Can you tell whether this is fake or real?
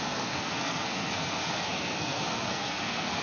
fake